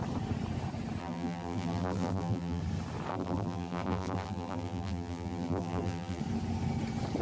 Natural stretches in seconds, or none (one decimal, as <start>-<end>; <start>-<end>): 0.0-1.0; 2.6-3.1; 6.2-7.2

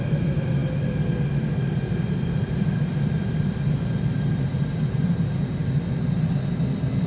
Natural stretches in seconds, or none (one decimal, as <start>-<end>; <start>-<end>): 0.0-7.1